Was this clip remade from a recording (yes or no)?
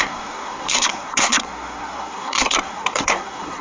yes